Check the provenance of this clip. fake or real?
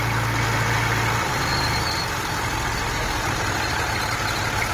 real